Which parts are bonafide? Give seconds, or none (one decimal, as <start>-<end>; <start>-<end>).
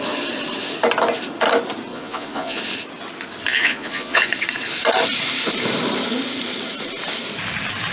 0.0-1.9; 2.6-3.5; 4.3-7.9